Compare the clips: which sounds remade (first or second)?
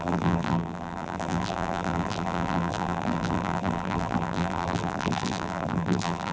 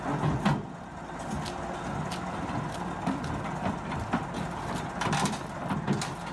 first